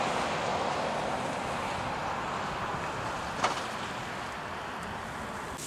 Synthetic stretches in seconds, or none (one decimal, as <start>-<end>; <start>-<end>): none